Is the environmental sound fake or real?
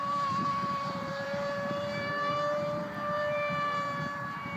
fake